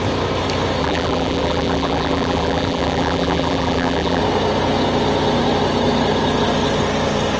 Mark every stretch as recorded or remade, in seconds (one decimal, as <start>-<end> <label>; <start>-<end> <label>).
0.0-0.8 recorded; 0.8-4.2 remade; 4.2-7.4 recorded